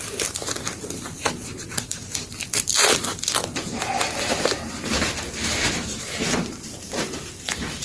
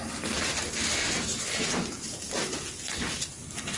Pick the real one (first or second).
second